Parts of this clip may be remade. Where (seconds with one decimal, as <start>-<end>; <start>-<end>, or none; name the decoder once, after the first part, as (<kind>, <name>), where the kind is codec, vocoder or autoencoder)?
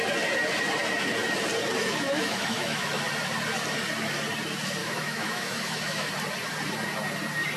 1.8-3.0 (autoencoder, DAC-VAE); 4.8-6.1